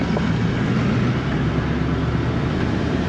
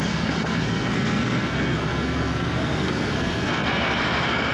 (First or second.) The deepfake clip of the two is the second